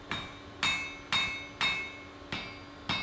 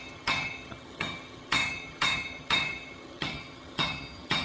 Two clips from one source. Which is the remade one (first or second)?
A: second